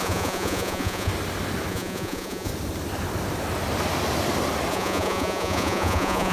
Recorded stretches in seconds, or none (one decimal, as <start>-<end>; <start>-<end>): 1.1-1.7; 2.5-4.7